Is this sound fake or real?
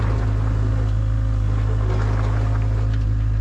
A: real